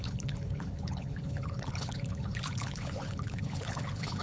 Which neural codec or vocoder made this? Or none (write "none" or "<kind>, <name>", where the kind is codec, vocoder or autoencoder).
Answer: codec, HILCodec